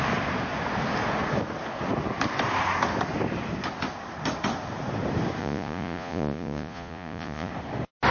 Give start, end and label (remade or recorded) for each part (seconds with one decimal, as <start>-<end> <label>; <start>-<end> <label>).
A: 0.0-5.4 recorded; 5.4-7.5 remade; 7.5-8.1 recorded